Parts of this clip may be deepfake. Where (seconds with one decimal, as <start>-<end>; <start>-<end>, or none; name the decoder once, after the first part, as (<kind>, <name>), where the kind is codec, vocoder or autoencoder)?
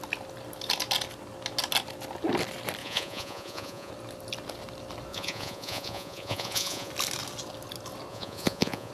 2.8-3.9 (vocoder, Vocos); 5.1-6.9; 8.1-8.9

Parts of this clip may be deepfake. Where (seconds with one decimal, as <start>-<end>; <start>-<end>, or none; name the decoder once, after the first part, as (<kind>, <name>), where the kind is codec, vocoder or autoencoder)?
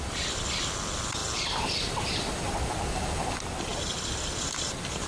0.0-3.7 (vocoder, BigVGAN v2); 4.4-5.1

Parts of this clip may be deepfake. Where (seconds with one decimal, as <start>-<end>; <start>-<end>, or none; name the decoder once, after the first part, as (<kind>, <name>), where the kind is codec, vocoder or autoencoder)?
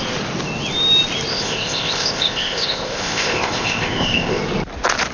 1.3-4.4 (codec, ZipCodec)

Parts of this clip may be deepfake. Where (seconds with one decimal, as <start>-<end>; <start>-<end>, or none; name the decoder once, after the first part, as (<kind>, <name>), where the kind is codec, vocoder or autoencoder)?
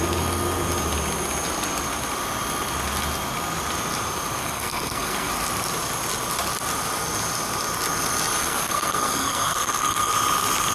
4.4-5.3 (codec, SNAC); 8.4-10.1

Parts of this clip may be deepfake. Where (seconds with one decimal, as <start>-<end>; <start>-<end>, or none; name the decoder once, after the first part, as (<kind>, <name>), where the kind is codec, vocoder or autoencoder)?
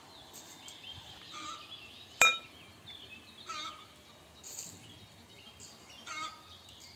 none